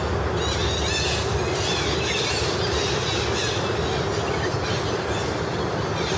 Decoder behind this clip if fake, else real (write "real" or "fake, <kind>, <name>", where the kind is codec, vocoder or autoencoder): real